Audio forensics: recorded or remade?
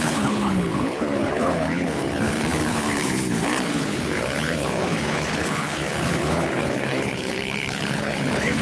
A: remade